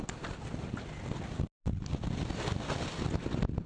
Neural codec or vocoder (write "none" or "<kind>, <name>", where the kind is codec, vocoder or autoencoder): none